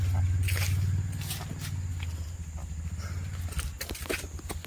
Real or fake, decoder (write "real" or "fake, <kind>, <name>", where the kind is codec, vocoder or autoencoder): real